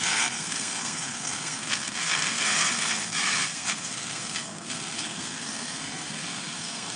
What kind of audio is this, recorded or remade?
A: remade